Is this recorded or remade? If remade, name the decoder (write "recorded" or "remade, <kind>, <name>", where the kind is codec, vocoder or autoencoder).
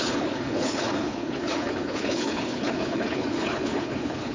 remade, codec, HILCodec